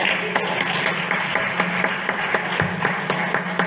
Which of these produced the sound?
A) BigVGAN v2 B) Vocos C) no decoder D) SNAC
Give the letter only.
C